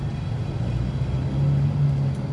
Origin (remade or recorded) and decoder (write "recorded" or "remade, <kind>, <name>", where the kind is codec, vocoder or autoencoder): recorded